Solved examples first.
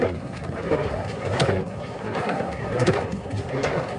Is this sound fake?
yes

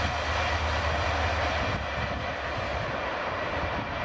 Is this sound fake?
no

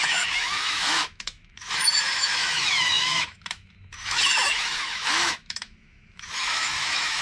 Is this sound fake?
yes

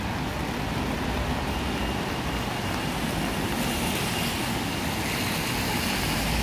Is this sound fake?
no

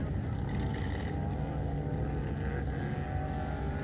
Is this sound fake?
no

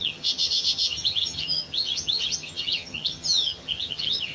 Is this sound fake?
yes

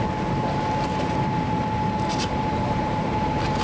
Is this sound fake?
yes